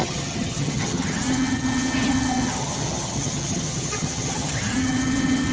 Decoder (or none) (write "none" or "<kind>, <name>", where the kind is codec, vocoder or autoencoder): vocoder, HiFi-GAN